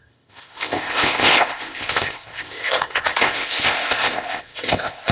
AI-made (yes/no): yes